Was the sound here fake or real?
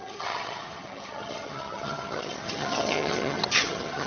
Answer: fake